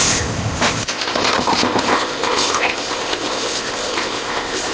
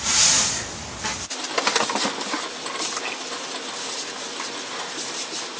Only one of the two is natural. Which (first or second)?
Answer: second